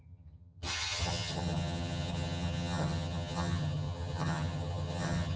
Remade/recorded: remade